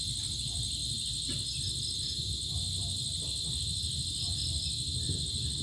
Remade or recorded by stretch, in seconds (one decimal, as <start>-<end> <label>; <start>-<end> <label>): 0.0-5.6 recorded